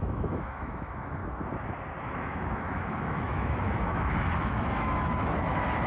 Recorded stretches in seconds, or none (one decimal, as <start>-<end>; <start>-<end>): 1.2-2.0